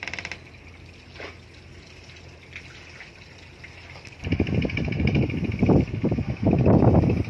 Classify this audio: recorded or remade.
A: recorded